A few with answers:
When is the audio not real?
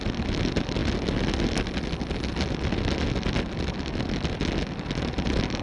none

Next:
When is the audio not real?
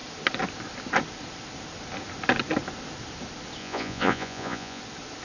3.6-4.8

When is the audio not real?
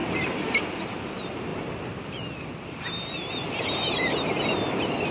none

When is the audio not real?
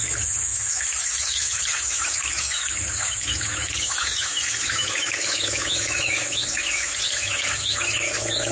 0.0-8.5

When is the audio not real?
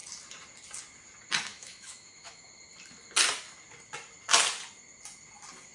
1.5-2.5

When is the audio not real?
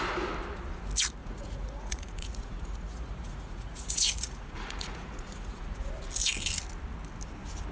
1.2-5.8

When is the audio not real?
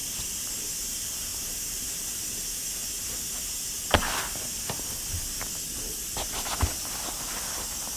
0.0-0.5; 1.3-1.8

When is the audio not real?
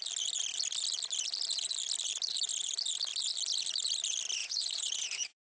4.4-5.4